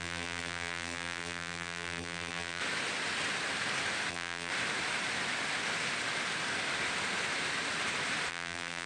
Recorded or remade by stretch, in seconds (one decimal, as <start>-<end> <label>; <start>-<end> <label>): 0.0-2.6 remade; 2.6-4.1 recorded; 4.1-4.5 remade; 4.5-8.3 recorded; 8.3-8.9 remade